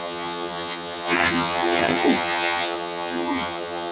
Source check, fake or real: fake